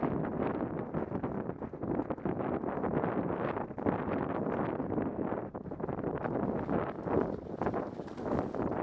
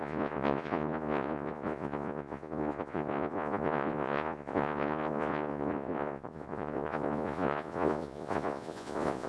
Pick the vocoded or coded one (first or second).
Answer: second